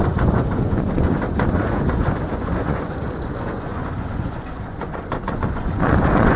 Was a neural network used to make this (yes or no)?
yes